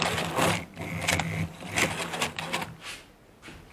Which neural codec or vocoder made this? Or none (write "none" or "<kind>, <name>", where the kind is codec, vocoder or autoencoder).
none